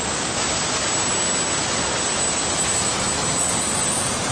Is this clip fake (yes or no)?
no